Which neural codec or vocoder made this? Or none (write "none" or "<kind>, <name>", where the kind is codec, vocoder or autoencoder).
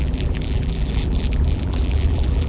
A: vocoder, BigVGAN v2